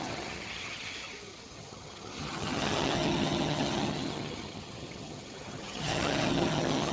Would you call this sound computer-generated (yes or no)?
yes